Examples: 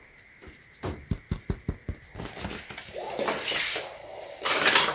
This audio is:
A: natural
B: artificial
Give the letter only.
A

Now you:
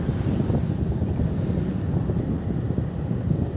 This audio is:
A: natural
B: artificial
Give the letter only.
A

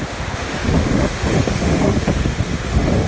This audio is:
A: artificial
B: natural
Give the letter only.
A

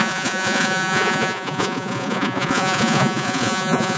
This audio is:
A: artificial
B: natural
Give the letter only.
A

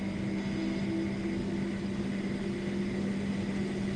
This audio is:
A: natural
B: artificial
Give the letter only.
A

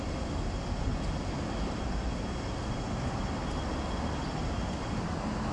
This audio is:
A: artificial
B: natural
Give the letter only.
B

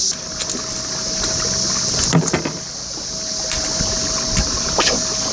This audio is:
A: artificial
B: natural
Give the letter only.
B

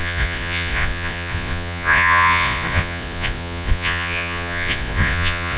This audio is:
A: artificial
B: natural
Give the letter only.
A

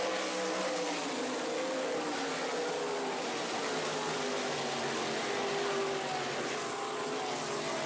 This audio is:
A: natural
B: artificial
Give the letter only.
A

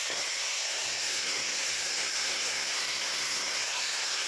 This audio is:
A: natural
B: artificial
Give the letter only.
B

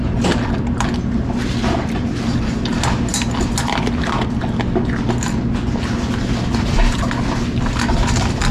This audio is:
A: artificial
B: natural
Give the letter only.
B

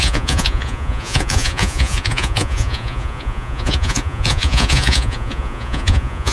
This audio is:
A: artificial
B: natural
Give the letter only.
A